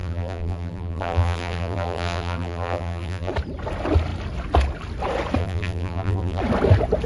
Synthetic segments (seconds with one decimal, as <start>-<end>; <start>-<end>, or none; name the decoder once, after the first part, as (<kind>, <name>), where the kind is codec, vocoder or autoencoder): 0.0-3.3 (vocoder, BigVGAN v2); 5.4-6.4